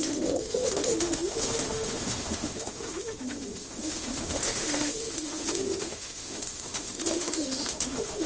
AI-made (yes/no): yes